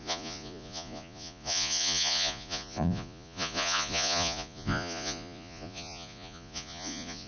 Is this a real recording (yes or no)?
no